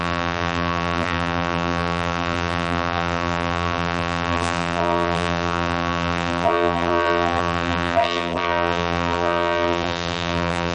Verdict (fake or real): fake